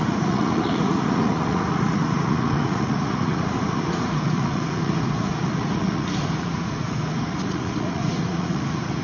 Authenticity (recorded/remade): remade